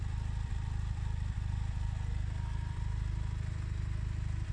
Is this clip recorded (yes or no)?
yes